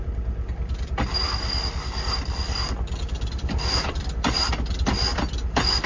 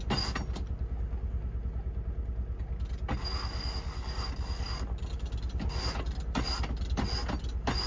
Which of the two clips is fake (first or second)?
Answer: first